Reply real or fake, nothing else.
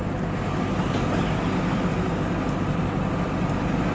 real